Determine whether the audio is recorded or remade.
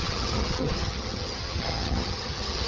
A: remade